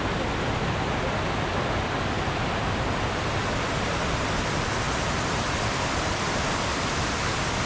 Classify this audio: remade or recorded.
recorded